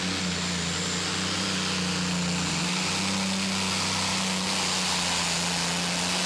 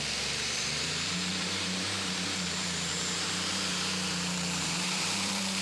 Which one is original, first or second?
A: first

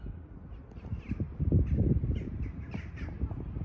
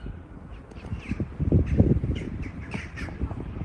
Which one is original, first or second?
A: first